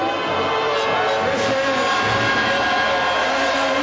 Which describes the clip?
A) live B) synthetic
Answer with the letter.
A